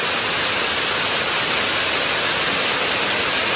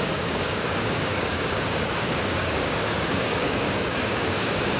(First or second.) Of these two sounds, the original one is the first